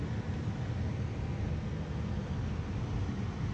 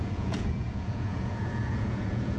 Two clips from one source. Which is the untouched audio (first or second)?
first